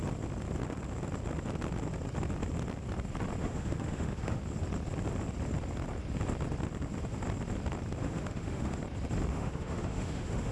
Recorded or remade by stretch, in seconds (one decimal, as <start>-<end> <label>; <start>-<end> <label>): 0.0-3.4 recorded; 3.4-4.4 remade; 4.4-8.0 recorded; 8.0-8.8 remade; 8.8-9.3 recorded; 9.3-10.5 remade